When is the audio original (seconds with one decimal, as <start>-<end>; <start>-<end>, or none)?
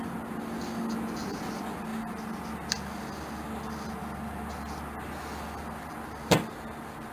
0.0-7.1